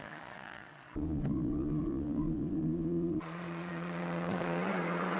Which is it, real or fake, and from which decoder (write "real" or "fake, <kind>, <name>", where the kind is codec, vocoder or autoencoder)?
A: fake, vocoder, Vocos